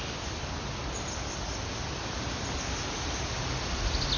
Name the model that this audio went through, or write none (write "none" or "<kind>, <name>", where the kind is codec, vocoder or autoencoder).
none